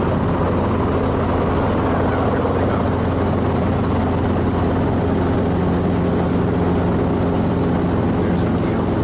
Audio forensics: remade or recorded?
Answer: recorded